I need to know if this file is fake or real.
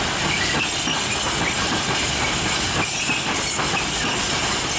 real